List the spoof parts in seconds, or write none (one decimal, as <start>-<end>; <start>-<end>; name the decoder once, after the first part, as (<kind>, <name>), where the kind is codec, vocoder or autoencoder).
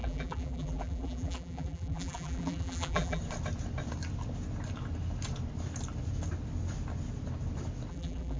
0.0-3.2 (vocoder, BigVGAN v2); 7.9-8.4